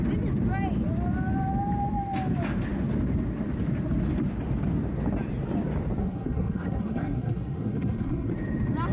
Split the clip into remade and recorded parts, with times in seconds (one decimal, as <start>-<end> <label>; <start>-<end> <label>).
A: 0.0-6.0 recorded; 6.0-8.3 remade; 8.3-8.9 recorded